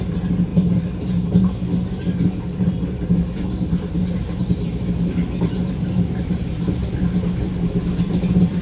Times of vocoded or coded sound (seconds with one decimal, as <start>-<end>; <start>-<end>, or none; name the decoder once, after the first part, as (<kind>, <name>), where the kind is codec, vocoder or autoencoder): none